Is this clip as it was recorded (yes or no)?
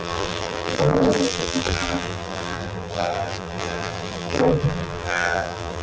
no